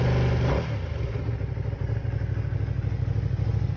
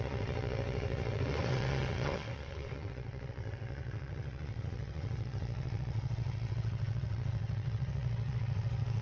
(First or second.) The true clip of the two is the first